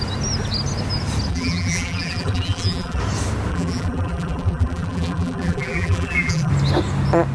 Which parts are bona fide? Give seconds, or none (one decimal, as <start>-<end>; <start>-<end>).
0.0-1.3; 3.0-3.5; 6.5-7.3